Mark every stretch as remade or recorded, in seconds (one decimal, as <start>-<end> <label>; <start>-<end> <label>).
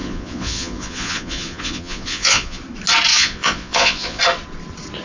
0.0-2.6 remade; 2.6-3.1 recorded; 3.1-4.2 remade; 4.2-5.0 recorded